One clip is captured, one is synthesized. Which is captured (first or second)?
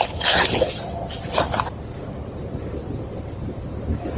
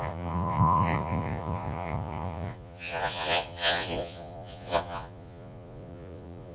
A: first